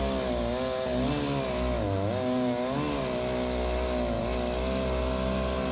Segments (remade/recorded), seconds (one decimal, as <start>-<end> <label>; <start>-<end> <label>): 0.0-5.7 recorded